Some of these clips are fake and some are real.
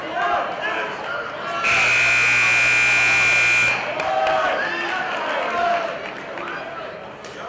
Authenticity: real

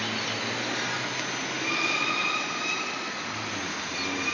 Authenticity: real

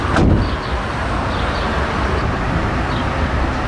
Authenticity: real